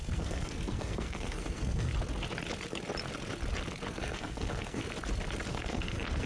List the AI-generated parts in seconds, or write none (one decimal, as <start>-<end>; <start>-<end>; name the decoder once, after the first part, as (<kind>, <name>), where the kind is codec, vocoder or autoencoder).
0.0-1.9 (codec, SNAC); 3.9-4.8; 5.5-6.3